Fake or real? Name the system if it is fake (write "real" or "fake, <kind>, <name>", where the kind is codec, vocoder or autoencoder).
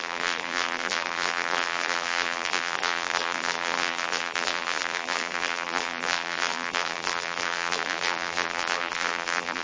fake, vocoder, BigVGAN v2